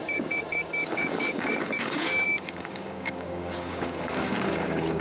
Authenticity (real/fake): fake